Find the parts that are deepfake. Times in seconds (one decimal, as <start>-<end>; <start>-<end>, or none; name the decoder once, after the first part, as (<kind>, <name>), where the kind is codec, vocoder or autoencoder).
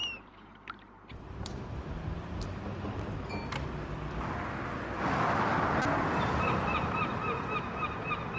0.0-1.5 (vocoder, BigVGAN v2)